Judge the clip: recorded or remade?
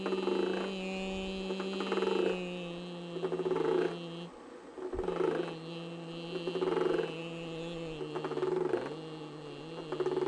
recorded